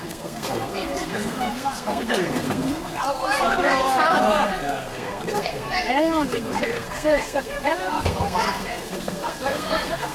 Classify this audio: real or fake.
fake